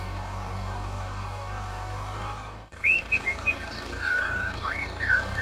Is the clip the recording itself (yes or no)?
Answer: no